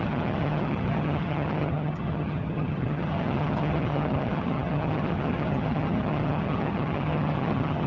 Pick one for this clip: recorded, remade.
remade